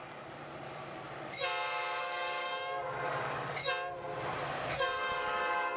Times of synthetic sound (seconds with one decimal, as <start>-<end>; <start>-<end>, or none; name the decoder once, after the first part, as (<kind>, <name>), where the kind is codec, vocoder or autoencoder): 0.0-0.4 (codec, DAC); 2.0-3.6; 4.7-5.8